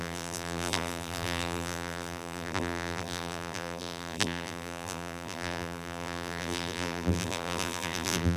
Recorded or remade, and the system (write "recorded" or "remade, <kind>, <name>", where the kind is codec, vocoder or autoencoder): remade, vocoder, BigVGAN v2